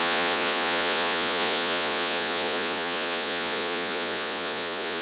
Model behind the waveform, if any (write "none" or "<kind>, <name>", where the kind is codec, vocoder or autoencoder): vocoder, Vocos